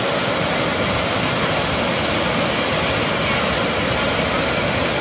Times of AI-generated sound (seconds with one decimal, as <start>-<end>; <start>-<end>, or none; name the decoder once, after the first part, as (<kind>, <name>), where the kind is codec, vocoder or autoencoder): none